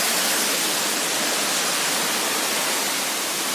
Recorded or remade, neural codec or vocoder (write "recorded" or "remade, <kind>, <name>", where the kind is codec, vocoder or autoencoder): recorded